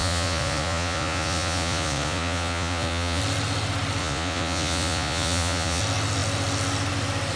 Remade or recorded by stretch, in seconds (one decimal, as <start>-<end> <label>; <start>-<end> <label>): 0.0-3.2 remade; 3.2-4.0 recorded; 4.0-5.8 remade; 5.8-7.4 recorded